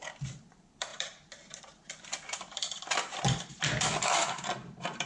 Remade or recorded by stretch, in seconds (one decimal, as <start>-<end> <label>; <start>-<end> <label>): 0.0-5.1 remade